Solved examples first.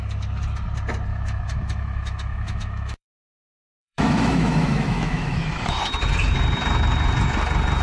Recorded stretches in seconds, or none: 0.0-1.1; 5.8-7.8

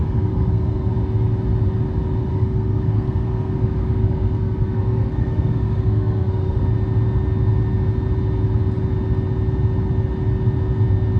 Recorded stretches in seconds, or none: 0.9-2.3; 6.6-11.2

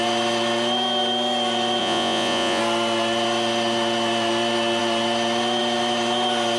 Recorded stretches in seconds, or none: 0.0-1.8; 2.6-6.6

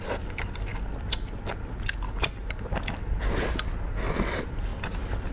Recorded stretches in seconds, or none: 0.0-5.3

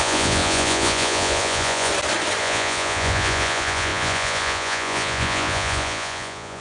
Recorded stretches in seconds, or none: 1.9-2.4